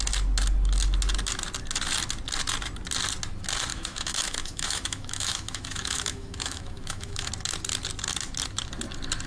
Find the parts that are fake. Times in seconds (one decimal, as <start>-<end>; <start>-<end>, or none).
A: 3.7-7.3